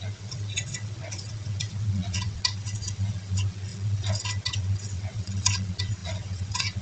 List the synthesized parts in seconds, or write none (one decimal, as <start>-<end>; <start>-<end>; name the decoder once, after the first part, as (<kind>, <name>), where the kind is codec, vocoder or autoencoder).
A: 0.0-6.8 (vocoder, WaveNeXt)